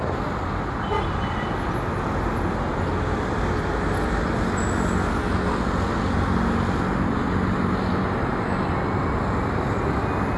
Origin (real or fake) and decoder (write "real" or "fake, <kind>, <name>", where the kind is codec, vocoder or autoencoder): real